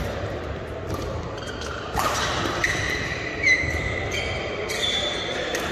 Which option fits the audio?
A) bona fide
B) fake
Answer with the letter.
B